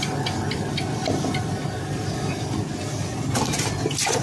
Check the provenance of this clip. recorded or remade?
recorded